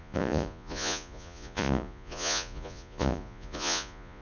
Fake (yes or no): yes